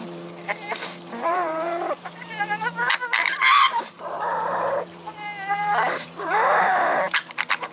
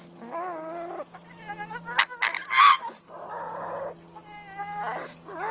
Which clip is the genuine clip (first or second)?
second